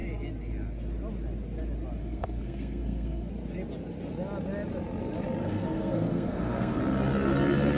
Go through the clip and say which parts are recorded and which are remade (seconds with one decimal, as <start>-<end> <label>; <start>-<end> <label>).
0.0-2.0 recorded; 2.0-3.3 remade; 3.3-5.4 recorded; 5.4-6.8 remade; 6.8-7.8 recorded